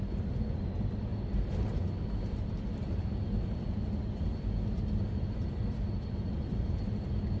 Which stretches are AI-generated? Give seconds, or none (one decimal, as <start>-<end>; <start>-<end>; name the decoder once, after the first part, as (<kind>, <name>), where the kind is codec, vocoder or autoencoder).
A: none